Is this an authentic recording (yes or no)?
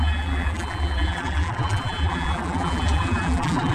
no